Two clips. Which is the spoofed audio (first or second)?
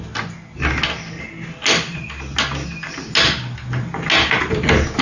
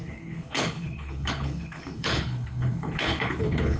second